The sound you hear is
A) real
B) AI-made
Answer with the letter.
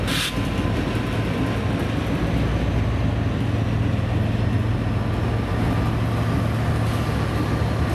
A